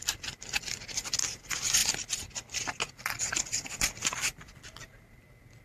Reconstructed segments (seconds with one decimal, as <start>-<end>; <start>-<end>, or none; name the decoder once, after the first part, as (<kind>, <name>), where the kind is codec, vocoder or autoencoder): none